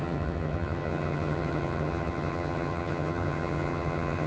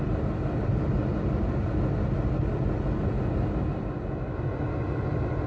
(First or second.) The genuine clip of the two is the second